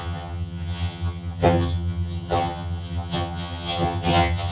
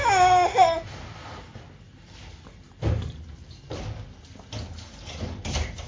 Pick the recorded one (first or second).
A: second